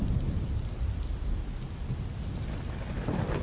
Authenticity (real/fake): real